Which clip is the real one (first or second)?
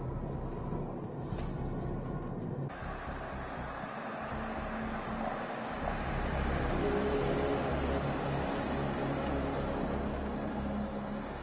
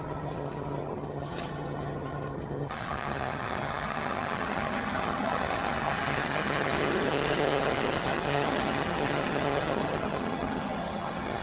first